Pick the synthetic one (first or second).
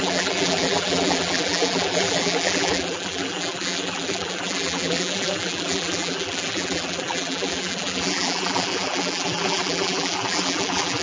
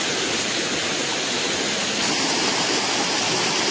first